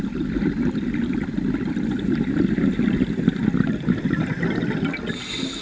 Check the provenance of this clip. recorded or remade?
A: recorded